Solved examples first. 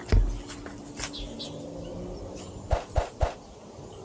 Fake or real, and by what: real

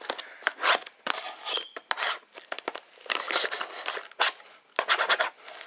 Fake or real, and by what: real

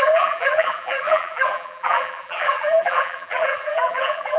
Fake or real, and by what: fake, vocoder, BigVGAN v2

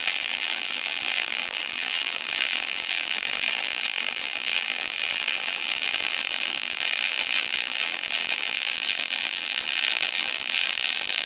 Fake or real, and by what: fake, vocoder, BigVGAN v2